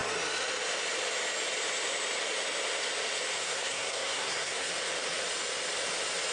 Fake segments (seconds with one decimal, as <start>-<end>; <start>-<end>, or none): 3.4-4.7